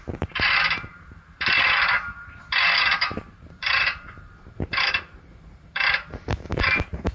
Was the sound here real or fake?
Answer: fake